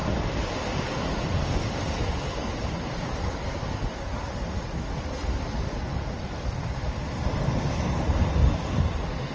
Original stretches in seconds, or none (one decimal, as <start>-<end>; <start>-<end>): 0.0-9.3